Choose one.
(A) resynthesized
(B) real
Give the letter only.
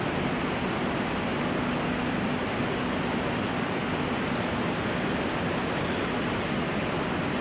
B